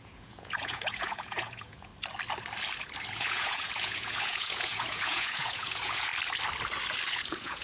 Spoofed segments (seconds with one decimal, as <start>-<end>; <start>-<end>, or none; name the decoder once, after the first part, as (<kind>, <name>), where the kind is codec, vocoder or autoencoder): 0.0-1.9 (vocoder, Vocos); 3.1-6.1; 7.1-7.6